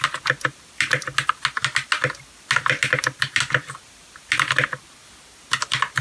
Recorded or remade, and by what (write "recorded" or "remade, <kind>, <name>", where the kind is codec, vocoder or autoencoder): recorded